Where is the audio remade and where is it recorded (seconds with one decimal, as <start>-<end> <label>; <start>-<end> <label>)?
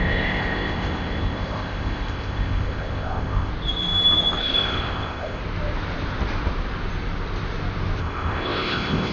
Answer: 0.0-3.5 remade; 3.5-4.4 recorded; 4.4-5.4 remade; 5.4-8.0 recorded; 8.0-9.1 remade